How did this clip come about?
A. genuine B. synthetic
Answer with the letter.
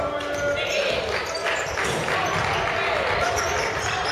A